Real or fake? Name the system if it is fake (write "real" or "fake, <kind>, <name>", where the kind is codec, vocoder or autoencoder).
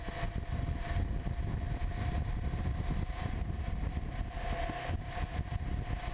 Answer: real